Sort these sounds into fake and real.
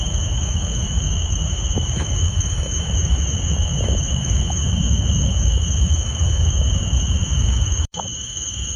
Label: fake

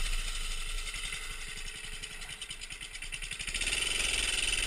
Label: real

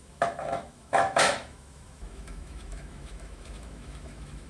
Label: fake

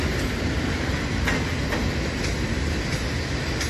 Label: real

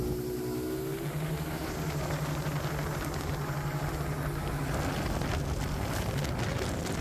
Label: real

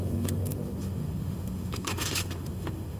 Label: fake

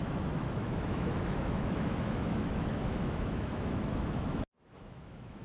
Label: fake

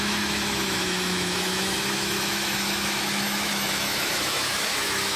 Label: fake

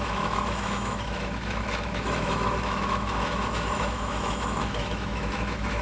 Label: fake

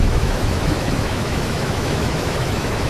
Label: fake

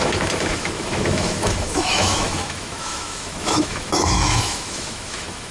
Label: fake